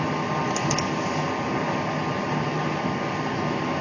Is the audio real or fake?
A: real